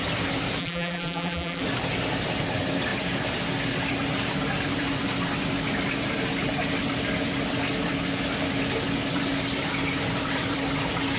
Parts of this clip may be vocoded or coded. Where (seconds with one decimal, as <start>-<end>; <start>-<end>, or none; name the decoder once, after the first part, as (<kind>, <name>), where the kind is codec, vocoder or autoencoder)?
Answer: 0.6-1.6 (vocoder, BigVGAN v2)